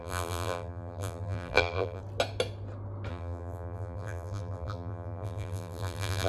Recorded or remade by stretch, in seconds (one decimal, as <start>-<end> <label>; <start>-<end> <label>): 0.0-2.0 remade; 2.0-3.1 recorded; 3.1-6.3 remade